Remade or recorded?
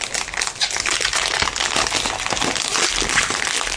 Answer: recorded